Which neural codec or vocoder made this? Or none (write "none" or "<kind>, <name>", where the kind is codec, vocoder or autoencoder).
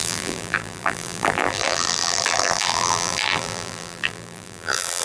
vocoder, BigVGAN v2